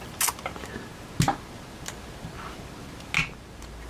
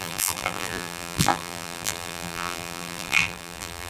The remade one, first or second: second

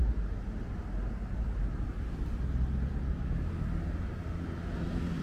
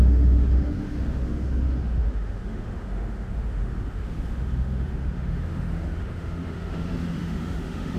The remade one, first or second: second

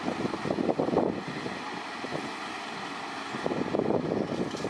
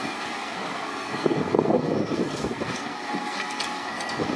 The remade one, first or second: second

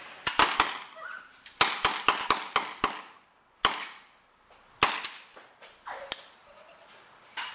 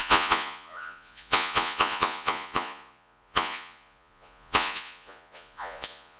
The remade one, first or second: second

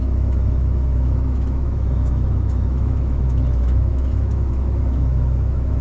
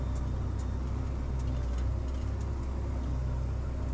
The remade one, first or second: first